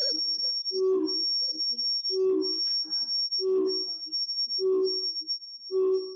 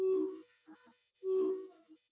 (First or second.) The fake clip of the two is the second